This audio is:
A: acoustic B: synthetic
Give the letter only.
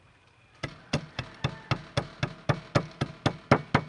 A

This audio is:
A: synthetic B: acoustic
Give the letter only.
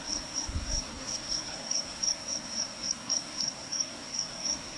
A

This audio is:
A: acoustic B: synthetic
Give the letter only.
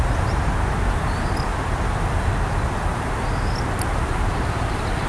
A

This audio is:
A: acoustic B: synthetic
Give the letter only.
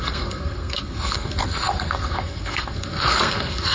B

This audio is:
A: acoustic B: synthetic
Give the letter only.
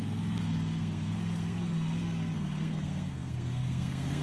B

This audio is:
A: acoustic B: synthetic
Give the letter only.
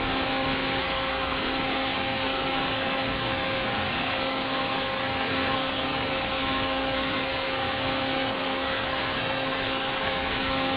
B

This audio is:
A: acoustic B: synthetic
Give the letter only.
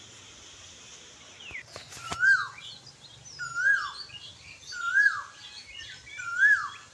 A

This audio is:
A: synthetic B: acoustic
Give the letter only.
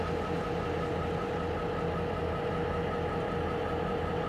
B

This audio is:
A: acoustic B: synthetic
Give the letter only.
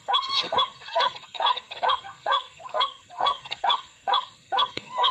B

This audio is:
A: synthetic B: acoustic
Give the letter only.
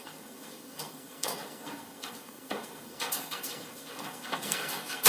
A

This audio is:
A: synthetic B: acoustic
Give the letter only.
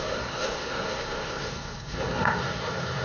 A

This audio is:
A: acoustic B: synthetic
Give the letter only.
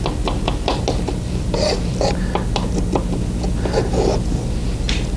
A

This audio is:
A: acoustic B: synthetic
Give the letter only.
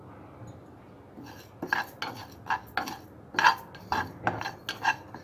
A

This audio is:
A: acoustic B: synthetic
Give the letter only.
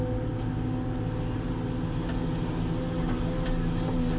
A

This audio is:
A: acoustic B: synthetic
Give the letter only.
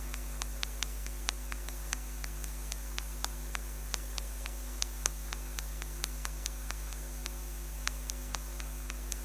B